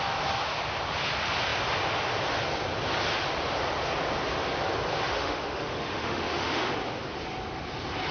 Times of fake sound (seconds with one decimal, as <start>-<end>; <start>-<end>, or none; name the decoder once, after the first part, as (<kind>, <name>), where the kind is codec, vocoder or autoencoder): 5.1-6.7 (autoencoder, DAC-VAE)